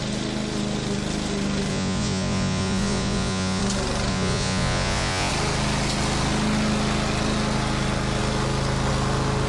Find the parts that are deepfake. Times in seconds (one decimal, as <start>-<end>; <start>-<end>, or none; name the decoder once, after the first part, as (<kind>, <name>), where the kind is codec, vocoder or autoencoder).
1.7-3.6 (vocoder, Vocos); 4.1-5.3